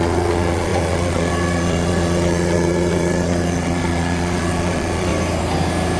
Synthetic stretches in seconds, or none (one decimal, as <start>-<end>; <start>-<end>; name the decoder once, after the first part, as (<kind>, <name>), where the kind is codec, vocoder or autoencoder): 0.0-5.1 (vocoder, Vocos)